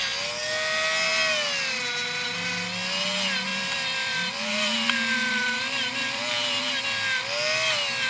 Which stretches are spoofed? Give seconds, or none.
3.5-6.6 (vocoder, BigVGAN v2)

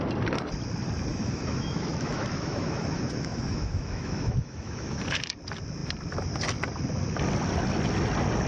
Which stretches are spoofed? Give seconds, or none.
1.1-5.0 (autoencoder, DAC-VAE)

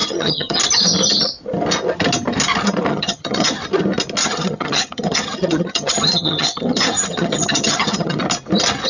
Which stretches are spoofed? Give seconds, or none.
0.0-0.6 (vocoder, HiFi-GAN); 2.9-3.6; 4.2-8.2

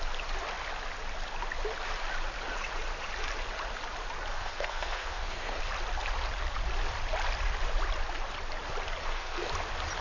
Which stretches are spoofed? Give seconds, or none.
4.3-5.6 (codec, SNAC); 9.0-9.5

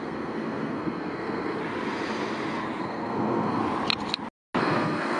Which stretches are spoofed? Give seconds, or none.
0.0-1.6 (codec, SNAC); 2.8-3.6; 4.6-5.2

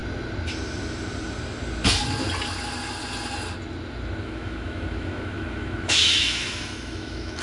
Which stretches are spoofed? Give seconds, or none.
4.2-7.4 (autoencoder, DAC-VAE)

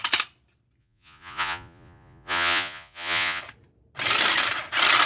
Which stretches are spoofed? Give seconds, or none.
0.8-3.4 (vocoder, Vocos)

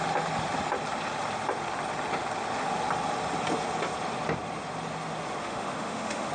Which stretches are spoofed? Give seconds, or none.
5.4-6.3 (autoencoder, DAC-VAE)